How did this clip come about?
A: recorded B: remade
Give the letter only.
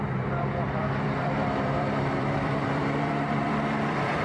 B